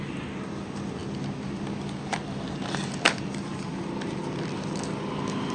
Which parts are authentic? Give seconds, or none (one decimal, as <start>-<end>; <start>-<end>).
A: 0.0-5.5